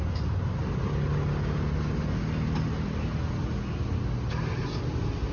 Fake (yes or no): no